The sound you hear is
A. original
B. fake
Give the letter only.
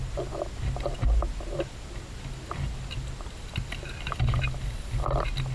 A